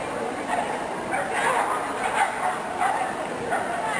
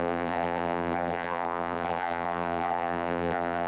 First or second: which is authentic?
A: first